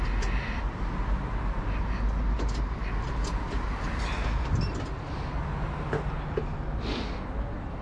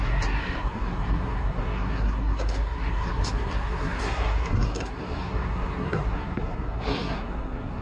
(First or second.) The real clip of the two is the first